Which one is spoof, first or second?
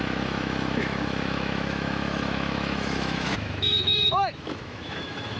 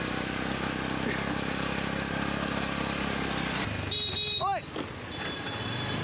first